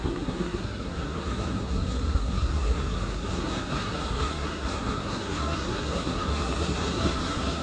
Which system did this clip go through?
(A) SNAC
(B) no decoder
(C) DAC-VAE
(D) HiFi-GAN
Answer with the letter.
A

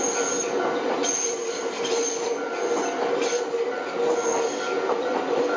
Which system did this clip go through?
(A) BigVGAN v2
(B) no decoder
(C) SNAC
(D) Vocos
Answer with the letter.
B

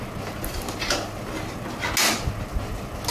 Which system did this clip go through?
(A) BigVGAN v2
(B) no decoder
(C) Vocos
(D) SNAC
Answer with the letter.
B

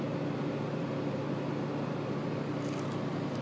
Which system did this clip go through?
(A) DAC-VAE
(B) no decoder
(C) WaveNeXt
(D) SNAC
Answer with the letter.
B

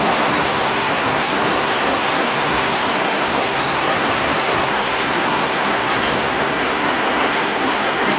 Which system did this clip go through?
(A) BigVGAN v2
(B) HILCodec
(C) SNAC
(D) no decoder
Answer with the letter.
C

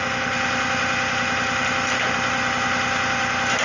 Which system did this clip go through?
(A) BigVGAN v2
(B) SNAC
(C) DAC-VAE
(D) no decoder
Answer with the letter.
D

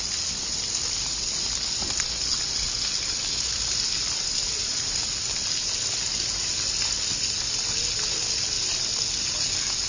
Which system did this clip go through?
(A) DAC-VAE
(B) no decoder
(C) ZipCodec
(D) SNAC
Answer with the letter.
B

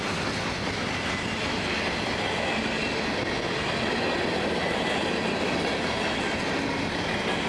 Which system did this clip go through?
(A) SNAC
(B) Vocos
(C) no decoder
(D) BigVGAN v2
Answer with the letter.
C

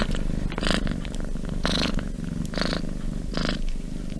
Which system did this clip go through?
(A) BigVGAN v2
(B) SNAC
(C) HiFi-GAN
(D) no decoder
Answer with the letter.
D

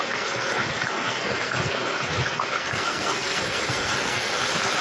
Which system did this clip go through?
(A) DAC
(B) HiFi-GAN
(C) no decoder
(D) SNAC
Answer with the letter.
D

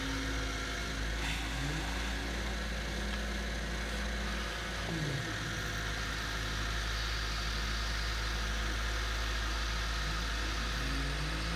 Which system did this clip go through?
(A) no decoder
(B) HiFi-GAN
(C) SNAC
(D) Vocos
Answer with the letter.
A